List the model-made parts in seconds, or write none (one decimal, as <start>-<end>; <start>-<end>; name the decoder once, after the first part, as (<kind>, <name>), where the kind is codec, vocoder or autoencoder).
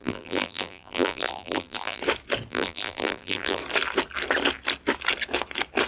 0.0-2.0 (vocoder, BigVGAN v2); 2.5-3.6